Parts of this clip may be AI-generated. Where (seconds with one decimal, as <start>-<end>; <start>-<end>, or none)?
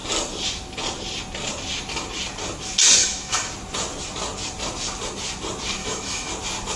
3.0-3.5; 5.8-6.3